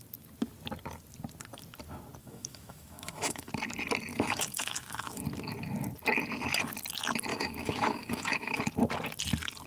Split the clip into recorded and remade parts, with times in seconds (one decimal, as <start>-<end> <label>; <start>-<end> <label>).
0.0-2.2 recorded; 2.2-3.5 remade; 3.5-4.1 recorded; 4.1-5.2 remade; 5.2-7.3 recorded; 7.3-8.6 remade; 8.6-9.7 recorded